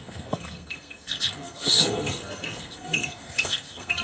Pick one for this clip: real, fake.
fake